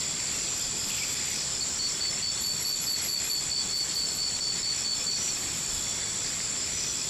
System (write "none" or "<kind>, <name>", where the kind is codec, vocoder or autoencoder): vocoder, BigVGAN v2